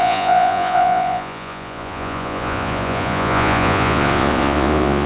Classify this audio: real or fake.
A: fake